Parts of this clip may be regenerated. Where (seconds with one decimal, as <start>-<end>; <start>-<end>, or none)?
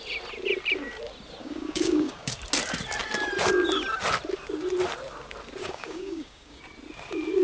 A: 1.4-2.3; 5.6-6.6